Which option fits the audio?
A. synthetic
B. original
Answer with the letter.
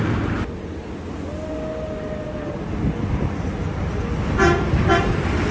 B